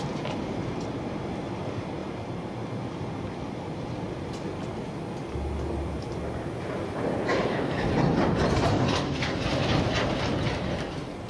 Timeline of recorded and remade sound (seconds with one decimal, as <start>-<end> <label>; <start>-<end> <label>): 0.0-7.3 recorded; 7.3-7.9 remade; 7.9-11.3 recorded